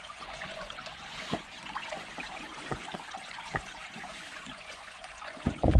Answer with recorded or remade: remade